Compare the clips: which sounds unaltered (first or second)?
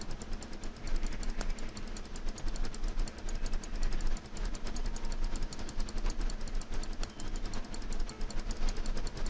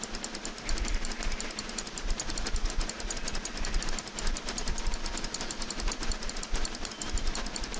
first